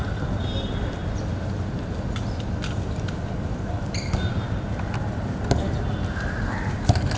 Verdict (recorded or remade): recorded